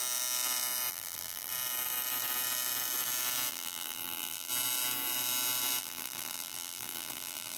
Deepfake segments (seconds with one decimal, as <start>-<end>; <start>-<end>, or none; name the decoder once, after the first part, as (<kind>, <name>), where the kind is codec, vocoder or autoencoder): 0.9-1.5 (vocoder, BigVGAN v2); 3.5-4.5; 5.8-7.6